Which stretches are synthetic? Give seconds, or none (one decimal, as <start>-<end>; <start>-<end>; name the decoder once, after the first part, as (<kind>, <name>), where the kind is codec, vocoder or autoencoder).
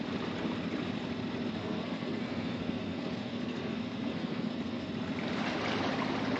1.6-4.9 (codec, SNAC)